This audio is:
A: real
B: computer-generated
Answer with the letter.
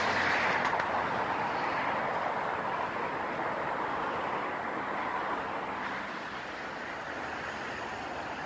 A